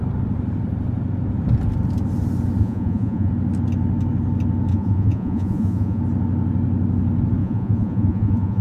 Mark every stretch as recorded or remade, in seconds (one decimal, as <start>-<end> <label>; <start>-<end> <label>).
0.0-2.6 recorded; 2.6-3.3 remade; 3.3-4.7 recorded; 4.7-6.0 remade; 6.0-7.4 recorded; 7.4-8.6 remade

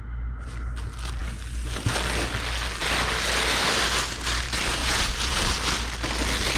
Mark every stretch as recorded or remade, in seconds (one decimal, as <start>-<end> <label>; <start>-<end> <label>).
0.0-4.8 recorded; 4.8-5.4 remade; 5.4-6.6 recorded

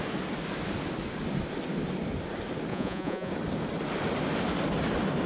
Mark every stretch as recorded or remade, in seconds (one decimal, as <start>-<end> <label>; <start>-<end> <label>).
0.0-2.7 recorded; 2.7-3.3 remade; 3.3-5.3 recorded

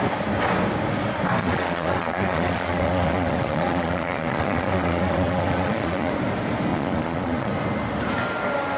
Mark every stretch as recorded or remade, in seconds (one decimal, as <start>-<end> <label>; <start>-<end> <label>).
0.0-1.4 recorded; 1.4-6.1 remade; 6.1-6.7 recorded; 6.7-7.5 remade; 7.5-8.8 recorded

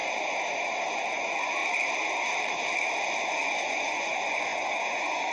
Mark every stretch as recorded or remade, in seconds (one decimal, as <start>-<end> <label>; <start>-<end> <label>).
0.0-1.1 recorded; 1.1-1.6 remade; 1.6-3.2 recorded; 3.2-5.3 remade

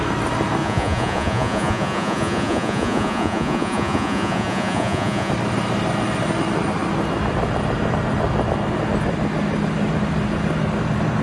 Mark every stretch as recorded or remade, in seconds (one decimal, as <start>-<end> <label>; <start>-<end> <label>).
0.0-0.6 recorded; 0.6-5.3 remade; 5.3-11.2 recorded

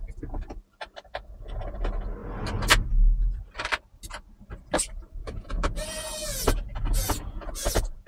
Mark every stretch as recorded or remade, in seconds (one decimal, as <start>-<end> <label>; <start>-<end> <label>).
0.0-5.2 recorded; 5.2-8.1 remade

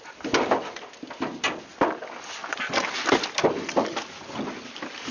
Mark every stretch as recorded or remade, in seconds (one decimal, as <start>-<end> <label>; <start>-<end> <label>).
0.0-5.1 recorded